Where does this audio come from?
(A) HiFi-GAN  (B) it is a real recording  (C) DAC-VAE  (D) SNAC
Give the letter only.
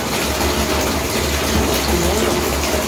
B